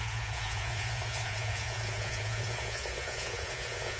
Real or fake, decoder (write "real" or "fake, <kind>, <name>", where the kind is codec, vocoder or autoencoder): fake, vocoder, Vocos